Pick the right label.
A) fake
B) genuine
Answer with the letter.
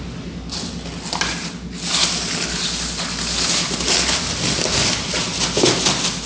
B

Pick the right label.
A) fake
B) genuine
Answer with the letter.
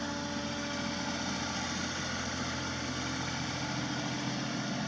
B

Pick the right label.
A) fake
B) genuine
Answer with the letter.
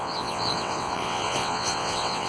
A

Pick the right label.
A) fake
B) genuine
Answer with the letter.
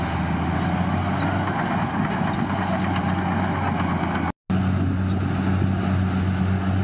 B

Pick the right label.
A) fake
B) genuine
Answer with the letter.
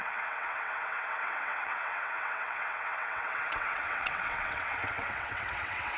A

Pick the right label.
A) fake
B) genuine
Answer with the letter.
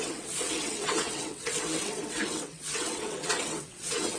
A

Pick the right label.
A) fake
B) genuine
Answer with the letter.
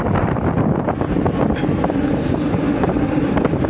B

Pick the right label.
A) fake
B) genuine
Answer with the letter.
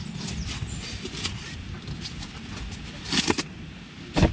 B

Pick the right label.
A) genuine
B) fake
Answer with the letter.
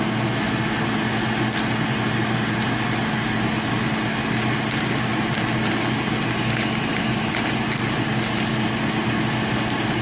A